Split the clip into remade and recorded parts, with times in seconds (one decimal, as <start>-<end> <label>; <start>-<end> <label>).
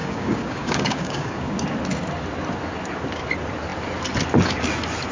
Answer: 0.0-1.5 remade; 1.5-5.1 recorded